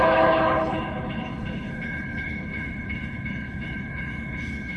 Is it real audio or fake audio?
fake